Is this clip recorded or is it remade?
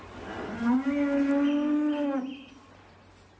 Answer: recorded